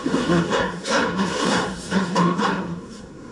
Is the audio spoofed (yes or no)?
yes